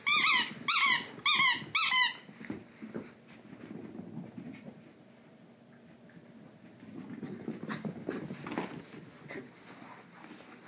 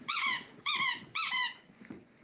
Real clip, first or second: first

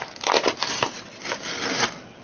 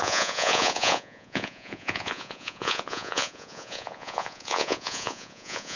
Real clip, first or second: first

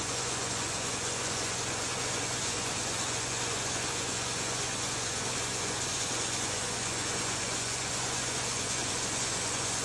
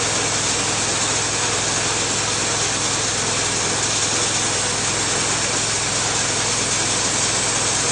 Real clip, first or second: second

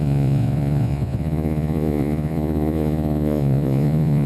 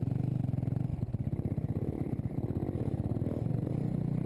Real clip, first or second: second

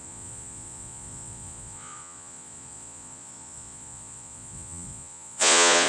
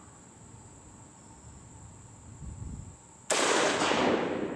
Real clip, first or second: second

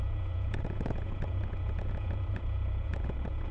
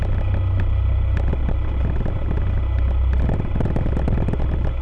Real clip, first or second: second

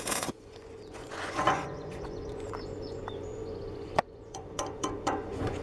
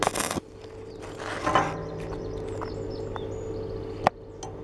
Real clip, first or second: second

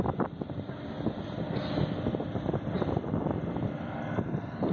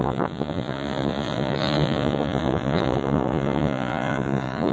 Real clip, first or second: first